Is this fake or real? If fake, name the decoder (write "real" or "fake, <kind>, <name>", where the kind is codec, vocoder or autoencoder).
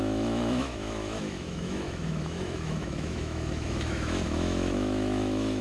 fake, autoencoder, DAC-VAE